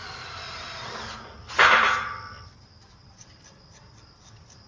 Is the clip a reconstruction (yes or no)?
no